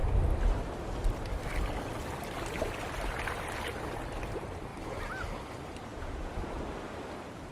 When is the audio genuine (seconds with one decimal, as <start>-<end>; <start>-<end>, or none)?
0.0-5.9; 6.7-7.5